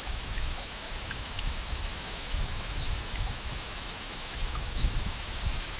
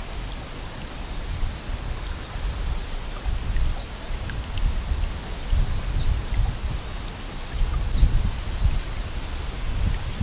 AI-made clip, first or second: first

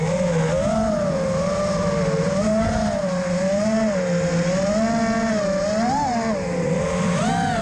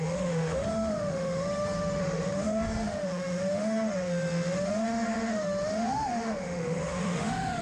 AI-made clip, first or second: second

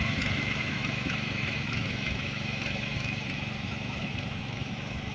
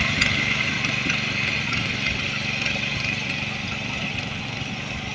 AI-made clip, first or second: first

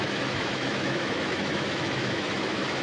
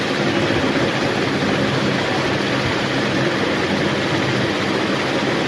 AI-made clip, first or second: first